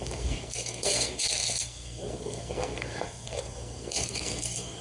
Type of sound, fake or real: fake